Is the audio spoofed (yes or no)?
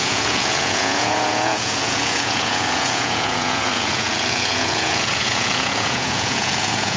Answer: yes